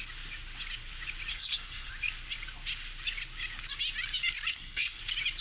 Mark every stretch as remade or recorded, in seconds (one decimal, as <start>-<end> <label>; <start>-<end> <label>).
0.0-1.3 recorded; 1.3-1.9 remade; 1.9-4.5 recorded; 4.5-5.0 remade; 5.0-5.4 recorded